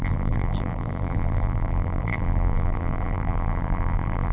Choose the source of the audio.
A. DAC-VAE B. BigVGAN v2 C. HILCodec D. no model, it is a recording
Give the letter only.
B